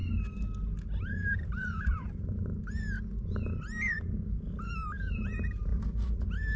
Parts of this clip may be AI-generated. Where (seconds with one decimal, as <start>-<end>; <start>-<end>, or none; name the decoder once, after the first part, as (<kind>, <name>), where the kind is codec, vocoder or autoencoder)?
1.0-2.5 (vocoder, BigVGAN v2); 4.7-5.7